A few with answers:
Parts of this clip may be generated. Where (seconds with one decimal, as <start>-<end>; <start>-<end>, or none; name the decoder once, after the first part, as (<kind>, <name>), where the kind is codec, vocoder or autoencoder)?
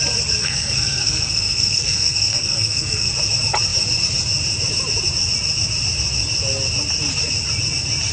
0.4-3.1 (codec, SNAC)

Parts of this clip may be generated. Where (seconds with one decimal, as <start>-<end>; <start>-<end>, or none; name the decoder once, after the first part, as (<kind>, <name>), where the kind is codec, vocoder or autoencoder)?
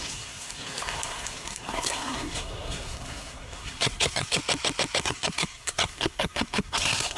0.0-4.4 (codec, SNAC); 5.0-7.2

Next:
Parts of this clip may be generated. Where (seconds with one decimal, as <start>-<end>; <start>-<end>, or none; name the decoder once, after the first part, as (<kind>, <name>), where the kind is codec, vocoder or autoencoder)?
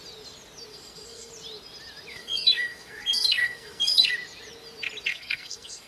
0.7-1.3 (codec, SNAC); 2.1-4.1; 5.1-5.9